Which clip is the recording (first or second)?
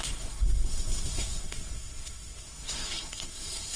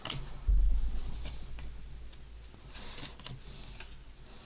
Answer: second